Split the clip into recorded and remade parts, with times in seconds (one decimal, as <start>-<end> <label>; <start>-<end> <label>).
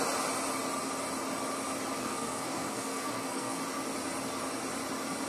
0.0-2.0 recorded; 2.0-3.6 remade; 3.6-5.3 recorded